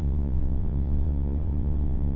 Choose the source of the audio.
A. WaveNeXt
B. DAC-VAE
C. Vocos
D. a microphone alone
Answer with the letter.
A